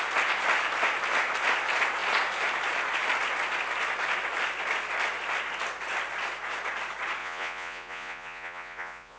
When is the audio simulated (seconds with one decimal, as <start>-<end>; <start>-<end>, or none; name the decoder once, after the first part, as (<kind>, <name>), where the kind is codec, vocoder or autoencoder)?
7.2-9.2 (vocoder, Vocos)